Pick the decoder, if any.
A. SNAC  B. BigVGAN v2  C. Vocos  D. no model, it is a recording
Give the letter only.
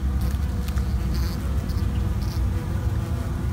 D